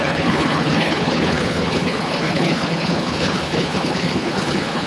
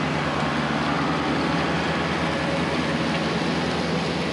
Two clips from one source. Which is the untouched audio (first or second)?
second